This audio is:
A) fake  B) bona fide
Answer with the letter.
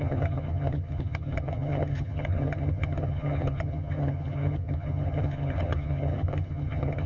A